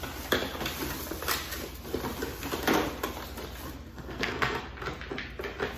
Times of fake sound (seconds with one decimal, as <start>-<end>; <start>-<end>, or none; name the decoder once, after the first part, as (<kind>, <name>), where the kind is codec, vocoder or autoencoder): 3.9-4.6 (codec, SNAC)